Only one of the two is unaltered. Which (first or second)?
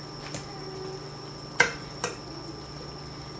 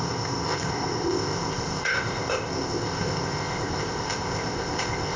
first